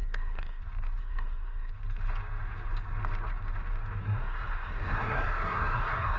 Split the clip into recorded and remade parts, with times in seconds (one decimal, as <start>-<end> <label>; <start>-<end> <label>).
0.0-0.6 remade; 0.6-1.0 recorded; 1.0-1.7 remade; 1.7-4.0 recorded; 4.0-6.2 remade